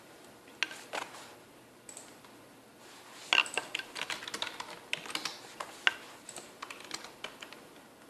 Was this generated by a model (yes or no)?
no